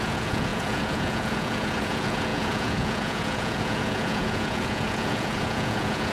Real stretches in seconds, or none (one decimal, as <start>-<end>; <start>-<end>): none